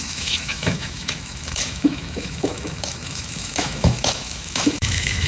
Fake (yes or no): yes